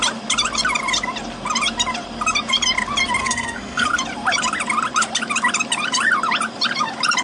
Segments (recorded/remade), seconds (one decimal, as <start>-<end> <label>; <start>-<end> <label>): 0.0-3.2 recorded; 3.2-3.9 remade; 3.9-7.2 recorded